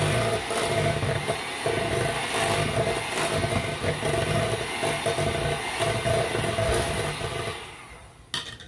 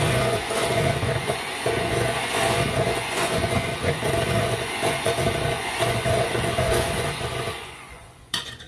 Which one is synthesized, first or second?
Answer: second